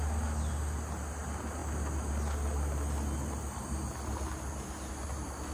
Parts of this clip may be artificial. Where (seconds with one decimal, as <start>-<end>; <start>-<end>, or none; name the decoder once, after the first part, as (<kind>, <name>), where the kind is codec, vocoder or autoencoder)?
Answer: none